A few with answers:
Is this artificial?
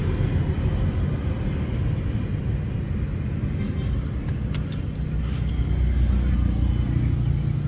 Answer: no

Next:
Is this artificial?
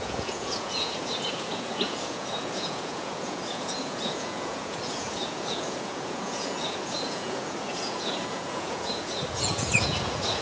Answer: yes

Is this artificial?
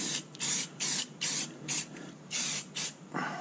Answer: yes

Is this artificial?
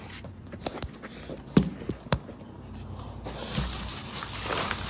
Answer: no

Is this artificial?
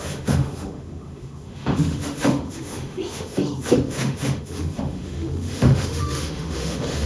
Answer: yes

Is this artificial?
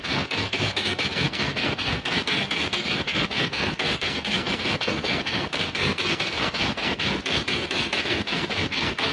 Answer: yes